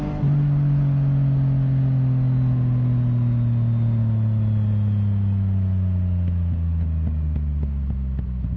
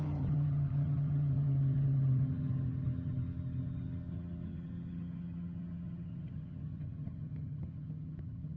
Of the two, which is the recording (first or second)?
first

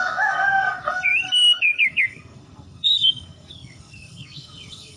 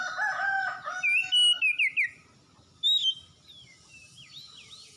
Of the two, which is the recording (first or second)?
second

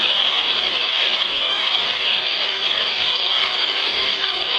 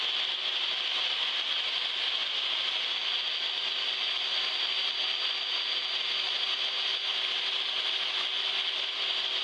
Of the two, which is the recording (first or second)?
second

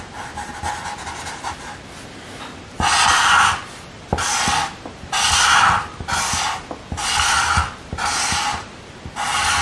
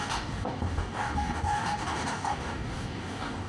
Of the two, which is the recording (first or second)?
first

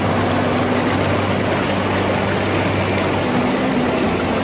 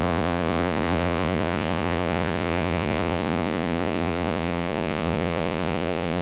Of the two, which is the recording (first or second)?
first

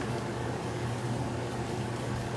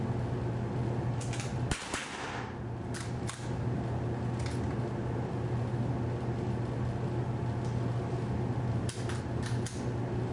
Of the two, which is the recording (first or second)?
second